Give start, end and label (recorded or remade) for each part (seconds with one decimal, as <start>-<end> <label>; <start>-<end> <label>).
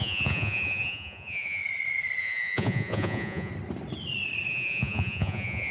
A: 0.0-1.6 remade; 1.6-2.2 recorded; 2.2-3.5 remade; 3.5-4.5 recorded; 4.5-5.7 remade